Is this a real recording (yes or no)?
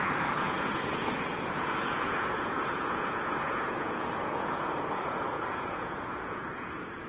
no